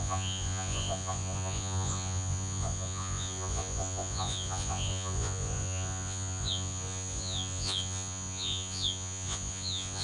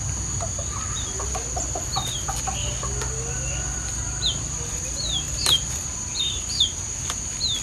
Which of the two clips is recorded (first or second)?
second